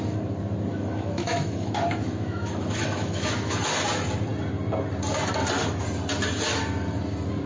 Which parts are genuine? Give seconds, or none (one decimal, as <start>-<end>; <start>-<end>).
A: 0.0-0.7; 3.6-7.5